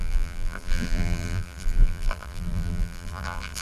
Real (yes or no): no